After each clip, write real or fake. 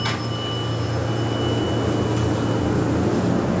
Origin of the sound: real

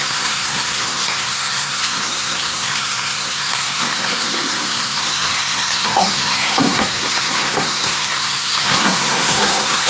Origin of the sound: fake